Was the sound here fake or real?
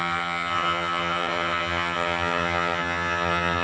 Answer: fake